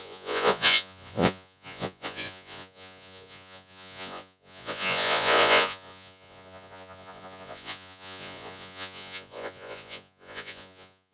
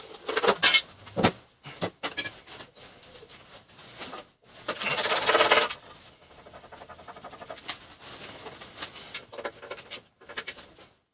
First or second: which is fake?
first